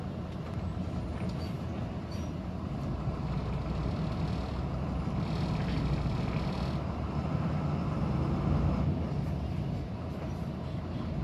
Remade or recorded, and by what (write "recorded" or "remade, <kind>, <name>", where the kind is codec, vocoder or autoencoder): recorded